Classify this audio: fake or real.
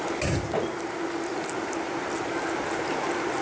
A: real